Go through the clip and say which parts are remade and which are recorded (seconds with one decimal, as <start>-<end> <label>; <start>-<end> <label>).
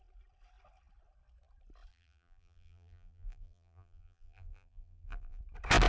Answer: 0.0-1.9 recorded; 1.9-5.4 remade; 5.4-5.9 recorded